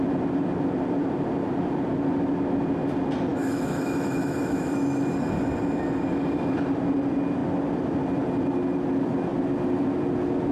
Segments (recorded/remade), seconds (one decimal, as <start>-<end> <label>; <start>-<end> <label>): 0.0-3.3 recorded; 3.3-5.1 remade; 5.1-10.5 recorded